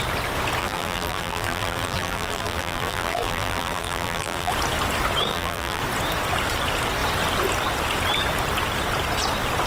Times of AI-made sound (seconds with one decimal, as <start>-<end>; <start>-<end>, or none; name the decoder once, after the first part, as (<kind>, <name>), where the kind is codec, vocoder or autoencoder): 0.6-4.5 (vocoder, BigVGAN v2); 5.3-5.8